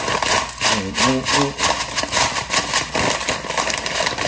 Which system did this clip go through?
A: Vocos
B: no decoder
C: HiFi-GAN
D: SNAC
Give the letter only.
B